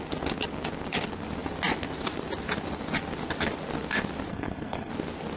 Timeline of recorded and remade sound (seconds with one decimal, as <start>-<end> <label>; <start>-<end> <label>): 0.0-4.3 recorded; 4.3-4.9 remade; 4.9-5.4 recorded